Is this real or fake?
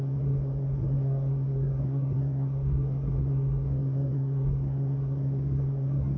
fake